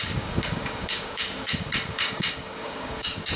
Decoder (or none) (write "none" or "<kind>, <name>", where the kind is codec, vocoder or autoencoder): codec, DAC